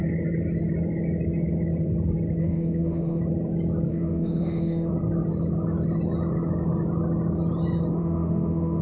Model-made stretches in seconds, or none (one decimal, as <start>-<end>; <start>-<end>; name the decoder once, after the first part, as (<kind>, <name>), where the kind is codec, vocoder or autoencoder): 2.4-3.2 (autoencoder, DAC-VAE); 3.9-4.9; 8.0-8.8

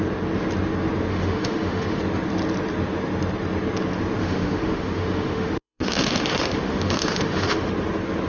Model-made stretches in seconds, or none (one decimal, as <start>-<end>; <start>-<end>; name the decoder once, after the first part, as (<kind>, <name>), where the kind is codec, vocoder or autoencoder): 1.1-2.0 (autoencoder, DAC-VAE); 4.2-7.7

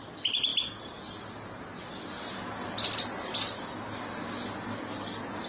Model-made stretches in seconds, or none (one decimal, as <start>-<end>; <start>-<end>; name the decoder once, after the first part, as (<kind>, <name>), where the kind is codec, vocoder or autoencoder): none

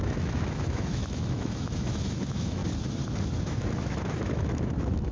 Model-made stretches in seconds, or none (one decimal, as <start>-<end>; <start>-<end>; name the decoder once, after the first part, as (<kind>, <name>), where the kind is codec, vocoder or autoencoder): 0.0-2.6 (autoencoder, DAC-VAE); 3.4-5.1

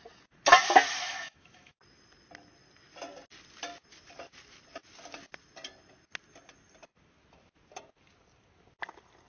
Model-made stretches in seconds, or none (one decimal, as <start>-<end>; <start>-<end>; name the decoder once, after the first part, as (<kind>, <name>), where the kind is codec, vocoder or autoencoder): 1.0-1.8 (autoencoder, DAC-VAE)

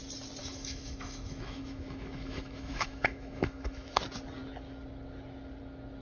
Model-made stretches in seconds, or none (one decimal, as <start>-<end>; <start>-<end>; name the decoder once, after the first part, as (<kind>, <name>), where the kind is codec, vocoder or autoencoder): 0.4-4.0 (autoencoder, DAC-VAE)

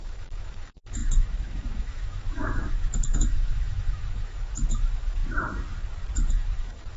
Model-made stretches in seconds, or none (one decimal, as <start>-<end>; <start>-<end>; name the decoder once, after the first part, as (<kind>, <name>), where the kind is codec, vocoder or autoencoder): 0.0-5.2 (autoencoder, DAC-VAE); 6.3-7.0